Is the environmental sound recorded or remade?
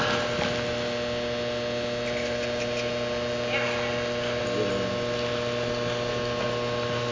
recorded